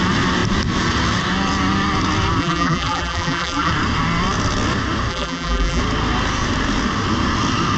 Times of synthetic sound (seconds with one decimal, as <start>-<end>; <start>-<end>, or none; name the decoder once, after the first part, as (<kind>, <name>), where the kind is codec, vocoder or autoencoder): 2.4-3.7 (vocoder, BigVGAN v2); 5.1-5.8